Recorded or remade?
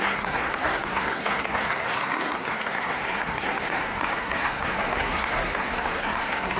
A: remade